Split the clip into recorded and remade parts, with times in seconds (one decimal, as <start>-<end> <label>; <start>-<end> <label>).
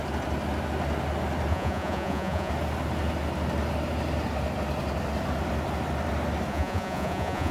0.0-1.5 recorded; 1.5-2.5 remade; 2.5-6.5 recorded; 6.5-7.5 remade